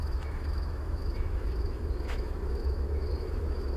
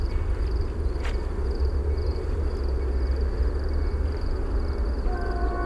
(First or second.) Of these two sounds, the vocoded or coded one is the first